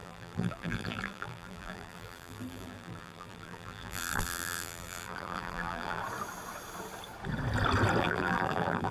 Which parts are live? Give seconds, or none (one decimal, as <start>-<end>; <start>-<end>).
6.0-8.0